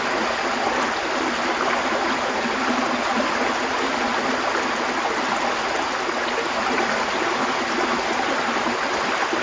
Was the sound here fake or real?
real